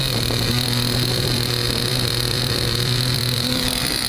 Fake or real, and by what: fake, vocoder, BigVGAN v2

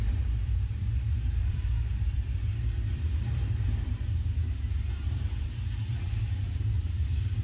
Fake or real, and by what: fake, vocoder, BigVGAN v2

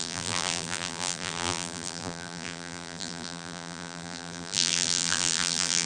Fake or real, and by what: fake, vocoder, BigVGAN v2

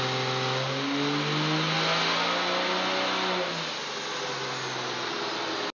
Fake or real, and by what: real